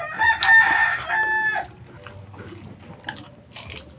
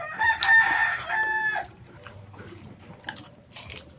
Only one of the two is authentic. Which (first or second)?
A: first